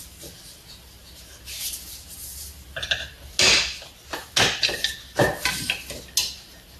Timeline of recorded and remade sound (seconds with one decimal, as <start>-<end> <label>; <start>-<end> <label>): 0.0-6.8 recorded

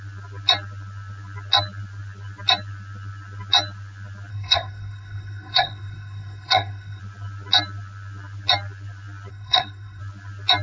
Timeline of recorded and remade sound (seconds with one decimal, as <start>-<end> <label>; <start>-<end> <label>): 0.0-4.3 recorded; 4.3-7.0 remade; 7.0-9.3 recorded; 9.3-10.0 remade; 10.0-10.6 recorded

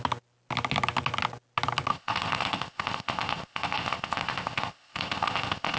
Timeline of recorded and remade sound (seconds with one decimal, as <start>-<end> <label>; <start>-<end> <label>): 0.0-1.9 recorded; 1.9-5.8 remade

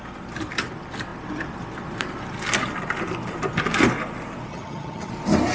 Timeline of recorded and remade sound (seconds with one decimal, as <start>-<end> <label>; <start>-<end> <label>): 0.0-4.5 recorded; 4.5-5.1 remade; 5.1-5.5 recorded

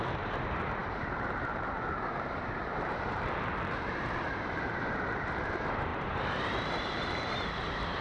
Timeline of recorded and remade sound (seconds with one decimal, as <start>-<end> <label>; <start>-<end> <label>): 0.0-8.0 remade